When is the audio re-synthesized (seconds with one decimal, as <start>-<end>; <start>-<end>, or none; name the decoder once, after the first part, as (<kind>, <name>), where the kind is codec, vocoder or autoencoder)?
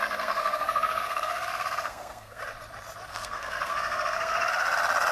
0.0-2.4 (codec, SNAC); 3.1-4.5